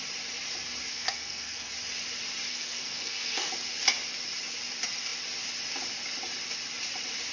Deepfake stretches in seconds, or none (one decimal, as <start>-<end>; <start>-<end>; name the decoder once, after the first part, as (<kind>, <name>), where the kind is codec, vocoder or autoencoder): 0.9-1.7 (codec, SNAC); 2.5-3.5